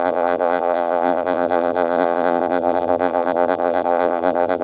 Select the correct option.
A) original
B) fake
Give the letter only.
B